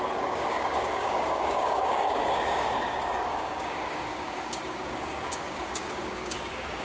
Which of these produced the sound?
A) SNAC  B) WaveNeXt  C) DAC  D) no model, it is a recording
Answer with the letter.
C